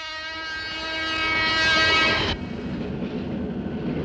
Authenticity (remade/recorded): recorded